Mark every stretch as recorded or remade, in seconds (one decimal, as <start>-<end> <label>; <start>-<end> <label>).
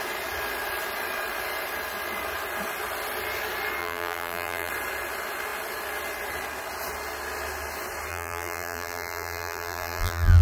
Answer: 0.0-3.8 recorded; 3.8-4.7 remade; 4.7-8.1 recorded; 8.1-10.4 remade